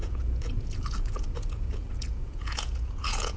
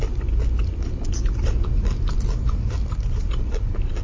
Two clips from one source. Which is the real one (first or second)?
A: second